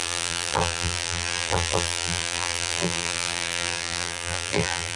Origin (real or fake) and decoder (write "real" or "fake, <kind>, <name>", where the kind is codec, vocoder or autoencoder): fake, vocoder, BigVGAN v2